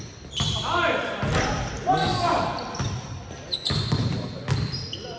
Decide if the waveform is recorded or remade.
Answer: recorded